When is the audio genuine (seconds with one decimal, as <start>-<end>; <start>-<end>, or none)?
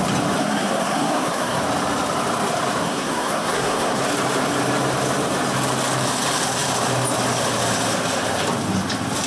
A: 0.0-0.4; 1.6-2.8; 4.0-9.3